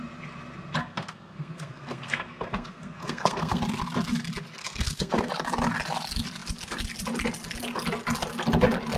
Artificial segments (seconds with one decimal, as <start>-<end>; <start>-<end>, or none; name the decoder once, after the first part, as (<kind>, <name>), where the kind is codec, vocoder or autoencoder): 0.8-3.6 (codec, SNAC); 4.6-5.3